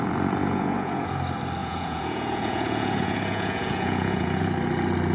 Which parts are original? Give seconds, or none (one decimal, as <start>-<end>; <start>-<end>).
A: 0.0-0.4; 1.1-1.6; 4.4-5.1